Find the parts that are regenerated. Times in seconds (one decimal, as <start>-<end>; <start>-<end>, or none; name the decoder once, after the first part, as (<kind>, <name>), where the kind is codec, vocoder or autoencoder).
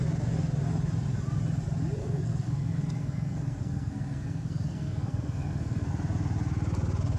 2.0-5.9 (codec, SNAC)